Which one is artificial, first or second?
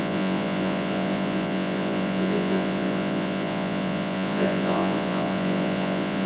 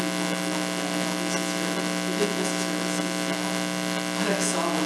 first